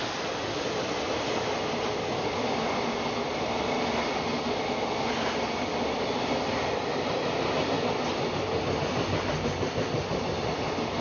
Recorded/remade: recorded